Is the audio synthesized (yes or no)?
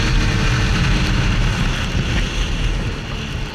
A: no